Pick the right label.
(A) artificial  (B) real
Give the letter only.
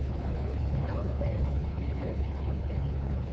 A